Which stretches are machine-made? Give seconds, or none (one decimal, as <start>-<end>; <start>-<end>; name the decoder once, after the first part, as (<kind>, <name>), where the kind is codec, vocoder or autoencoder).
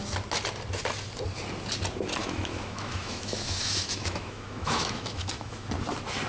2.2-5.7 (autoencoder, DAC-VAE)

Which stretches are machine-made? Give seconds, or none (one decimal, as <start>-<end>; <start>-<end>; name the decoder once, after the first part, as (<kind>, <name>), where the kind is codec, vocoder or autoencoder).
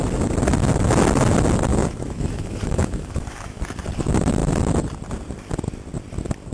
1.7-3.6 (autoencoder, DAC-VAE)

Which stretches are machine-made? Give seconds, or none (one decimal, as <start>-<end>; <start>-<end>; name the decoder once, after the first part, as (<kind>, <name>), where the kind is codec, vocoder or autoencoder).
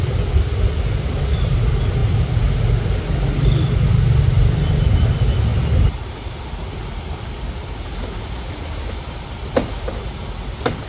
none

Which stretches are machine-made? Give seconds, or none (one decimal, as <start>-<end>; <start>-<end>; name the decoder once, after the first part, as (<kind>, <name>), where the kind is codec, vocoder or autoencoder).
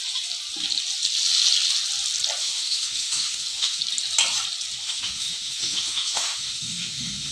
2.4-3.8 (autoencoder, DAC-VAE); 4.8-7.3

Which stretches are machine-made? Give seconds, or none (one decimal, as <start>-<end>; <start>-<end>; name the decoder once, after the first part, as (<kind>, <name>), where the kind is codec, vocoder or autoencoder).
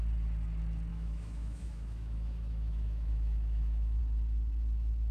0.9-4.0 (autoencoder, DAC-VAE)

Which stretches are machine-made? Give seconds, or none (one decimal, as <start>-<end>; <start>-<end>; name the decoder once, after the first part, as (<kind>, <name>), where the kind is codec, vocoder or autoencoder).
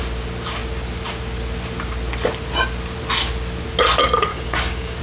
4.3-5.0 (codec, DAC)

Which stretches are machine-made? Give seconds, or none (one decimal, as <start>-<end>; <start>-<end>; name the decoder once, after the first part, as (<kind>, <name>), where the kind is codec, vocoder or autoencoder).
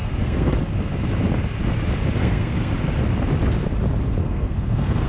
0.0-0.5 (codec, SNAC); 2.2-2.7; 4.2-5.1